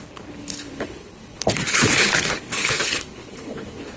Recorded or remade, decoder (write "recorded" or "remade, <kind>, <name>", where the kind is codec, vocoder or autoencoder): remade, codec, HILCodec